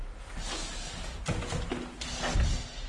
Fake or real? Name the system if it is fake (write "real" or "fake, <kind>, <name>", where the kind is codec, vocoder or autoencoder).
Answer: real